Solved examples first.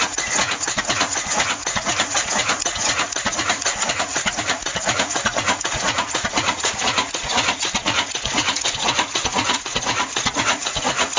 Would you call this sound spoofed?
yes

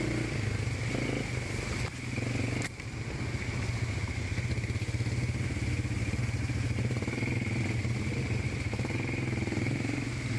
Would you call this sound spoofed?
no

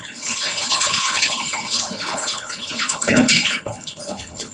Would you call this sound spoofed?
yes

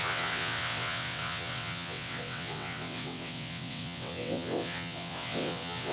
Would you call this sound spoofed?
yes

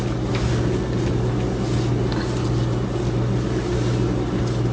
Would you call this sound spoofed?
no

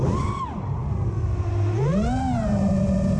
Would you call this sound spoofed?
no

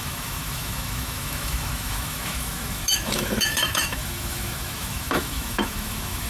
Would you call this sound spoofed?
yes